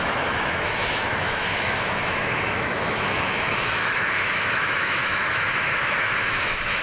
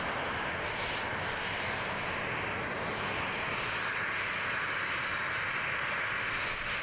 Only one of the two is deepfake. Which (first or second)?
first